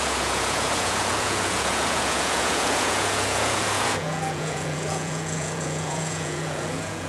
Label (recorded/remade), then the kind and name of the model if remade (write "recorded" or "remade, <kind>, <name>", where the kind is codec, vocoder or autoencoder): remade, vocoder, Vocos